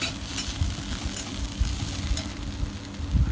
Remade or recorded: recorded